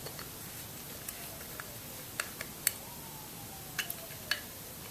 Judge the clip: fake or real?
real